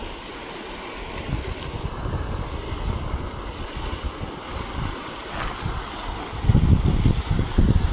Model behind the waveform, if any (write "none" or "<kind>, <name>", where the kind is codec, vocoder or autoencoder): none